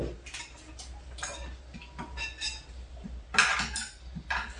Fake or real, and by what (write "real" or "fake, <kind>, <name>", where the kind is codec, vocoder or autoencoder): real